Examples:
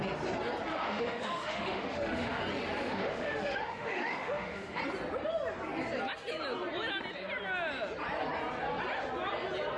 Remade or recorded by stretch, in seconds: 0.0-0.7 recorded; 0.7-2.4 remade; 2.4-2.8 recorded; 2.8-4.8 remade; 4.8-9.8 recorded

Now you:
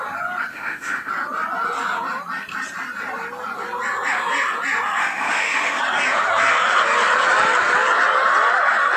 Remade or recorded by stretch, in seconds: 0.0-0.5 recorded; 0.5-1.1 remade; 1.1-5.0 recorded; 5.0-5.8 remade; 5.8-9.0 recorded

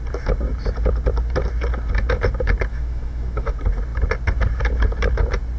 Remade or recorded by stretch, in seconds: 0.0-2.7 recorded; 2.7-3.5 remade; 3.5-5.6 recorded

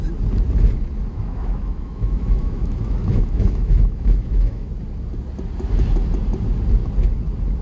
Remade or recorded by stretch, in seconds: 0.0-1.1 recorded; 1.1-4.7 remade; 4.7-7.6 recorded